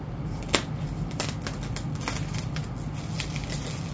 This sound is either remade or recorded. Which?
recorded